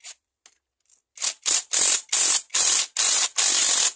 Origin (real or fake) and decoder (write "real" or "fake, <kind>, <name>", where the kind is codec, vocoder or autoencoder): real